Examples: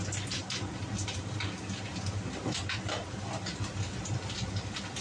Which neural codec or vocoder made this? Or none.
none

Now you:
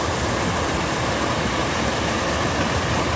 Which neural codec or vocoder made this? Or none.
none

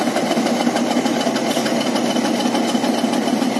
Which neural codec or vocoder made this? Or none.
none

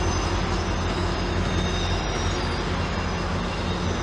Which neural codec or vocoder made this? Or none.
none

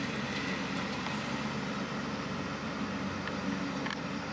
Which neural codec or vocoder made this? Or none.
none